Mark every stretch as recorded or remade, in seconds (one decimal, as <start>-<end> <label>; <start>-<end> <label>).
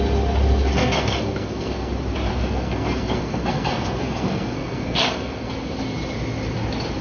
0.0-0.7 recorded; 0.7-1.9 remade; 1.9-2.3 recorded; 2.3-5.5 remade; 5.5-7.0 recorded